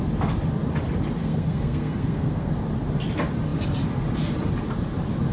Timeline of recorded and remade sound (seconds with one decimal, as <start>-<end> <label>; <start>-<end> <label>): 0.0-1.2 recorded; 1.2-2.5 remade; 2.5-5.3 recorded